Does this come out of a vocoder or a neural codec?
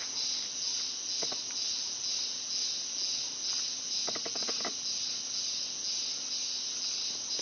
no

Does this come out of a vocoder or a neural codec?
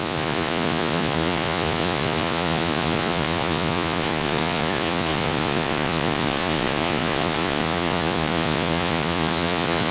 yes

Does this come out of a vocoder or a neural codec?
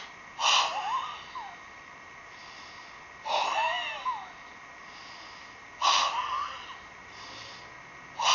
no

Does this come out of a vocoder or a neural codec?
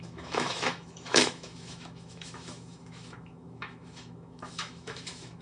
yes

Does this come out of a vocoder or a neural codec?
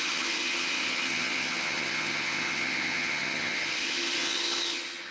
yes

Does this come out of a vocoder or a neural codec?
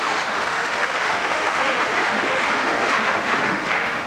yes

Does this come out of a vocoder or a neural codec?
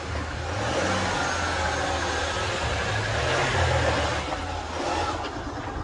no